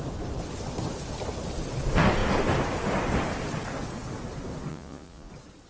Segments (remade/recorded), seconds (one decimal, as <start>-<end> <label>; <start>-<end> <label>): 0.0-4.7 recorded; 4.7-5.3 remade; 5.3-5.7 recorded